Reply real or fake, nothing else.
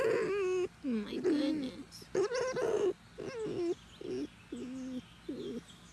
real